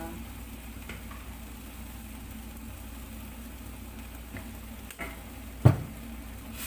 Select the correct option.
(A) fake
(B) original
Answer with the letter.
B